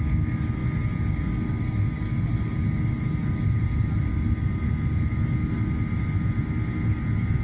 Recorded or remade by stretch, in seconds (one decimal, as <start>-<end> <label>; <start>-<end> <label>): 0.0-4.1 recorded; 4.1-4.6 remade; 4.6-7.4 recorded